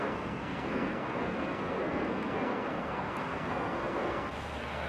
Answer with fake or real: fake